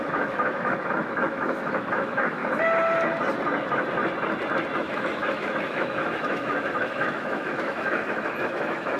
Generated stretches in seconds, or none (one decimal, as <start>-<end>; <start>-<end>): 0.0-2.4; 4.8-9.0